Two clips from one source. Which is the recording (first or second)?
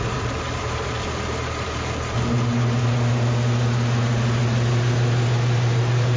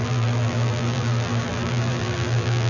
first